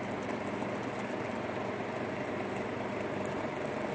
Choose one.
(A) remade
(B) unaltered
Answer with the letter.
B